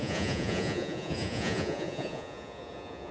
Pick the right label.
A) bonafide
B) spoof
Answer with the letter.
B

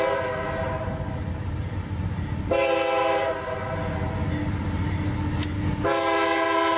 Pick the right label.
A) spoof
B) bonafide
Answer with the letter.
B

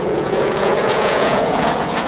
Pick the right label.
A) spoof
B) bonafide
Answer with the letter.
A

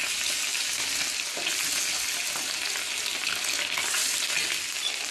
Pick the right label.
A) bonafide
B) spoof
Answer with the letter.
A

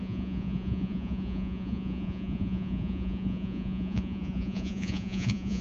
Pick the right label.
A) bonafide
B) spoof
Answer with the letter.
B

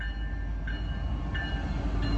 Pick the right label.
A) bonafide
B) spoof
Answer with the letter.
A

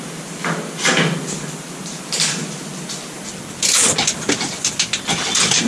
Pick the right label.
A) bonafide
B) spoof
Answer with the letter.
A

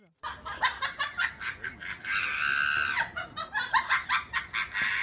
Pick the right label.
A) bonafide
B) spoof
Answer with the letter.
A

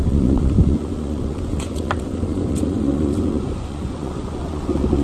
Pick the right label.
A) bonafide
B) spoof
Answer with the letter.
B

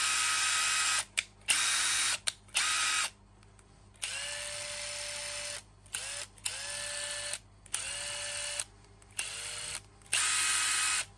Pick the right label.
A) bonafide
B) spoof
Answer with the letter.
A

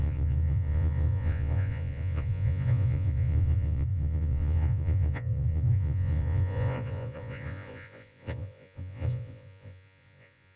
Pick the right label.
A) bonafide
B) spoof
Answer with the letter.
B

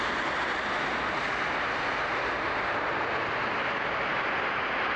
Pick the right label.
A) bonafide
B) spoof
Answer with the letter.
A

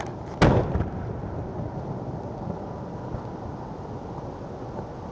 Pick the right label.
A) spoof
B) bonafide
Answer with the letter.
B